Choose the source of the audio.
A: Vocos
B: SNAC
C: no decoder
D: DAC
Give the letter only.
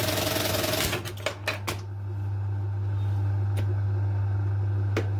C